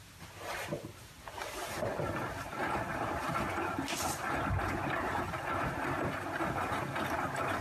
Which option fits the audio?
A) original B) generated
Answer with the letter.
A